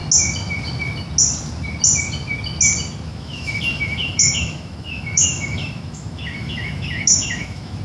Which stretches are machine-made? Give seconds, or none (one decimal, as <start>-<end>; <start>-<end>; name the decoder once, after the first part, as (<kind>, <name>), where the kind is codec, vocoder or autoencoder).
3.1-7.8 (autoencoder, DAC-VAE)